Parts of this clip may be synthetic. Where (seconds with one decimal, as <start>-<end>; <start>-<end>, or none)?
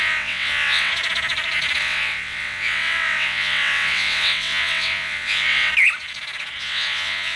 0.0-0.9; 1.8-5.7; 6.6-7.4